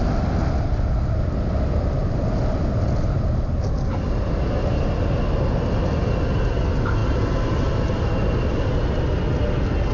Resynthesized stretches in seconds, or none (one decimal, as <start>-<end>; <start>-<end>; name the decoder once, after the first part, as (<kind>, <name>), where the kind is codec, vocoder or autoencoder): none